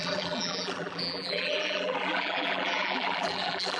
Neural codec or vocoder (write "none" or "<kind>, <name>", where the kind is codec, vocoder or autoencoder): vocoder, BigVGAN v2